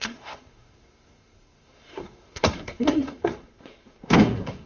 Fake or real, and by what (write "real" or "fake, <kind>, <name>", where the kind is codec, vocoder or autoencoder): fake, codec, SNAC